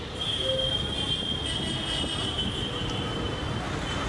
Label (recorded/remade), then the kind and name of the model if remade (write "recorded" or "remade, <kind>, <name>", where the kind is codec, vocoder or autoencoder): recorded